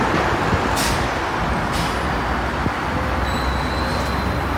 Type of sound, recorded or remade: recorded